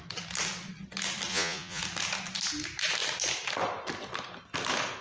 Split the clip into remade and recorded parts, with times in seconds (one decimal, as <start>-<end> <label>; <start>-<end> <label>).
0.0-1.3 recorded; 1.3-1.8 remade; 1.8-5.0 recorded